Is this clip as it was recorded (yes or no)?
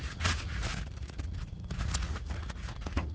no